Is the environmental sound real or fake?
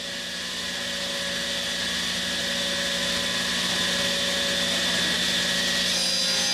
real